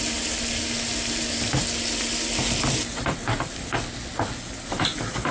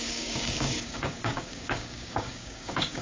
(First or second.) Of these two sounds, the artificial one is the second